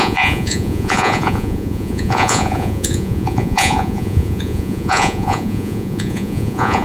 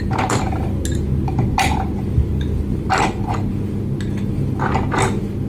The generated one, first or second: first